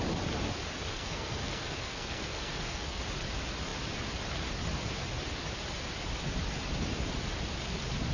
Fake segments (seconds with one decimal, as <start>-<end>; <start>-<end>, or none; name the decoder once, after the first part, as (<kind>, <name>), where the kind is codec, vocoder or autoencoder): 0.9-3.0 (codec, SNAC)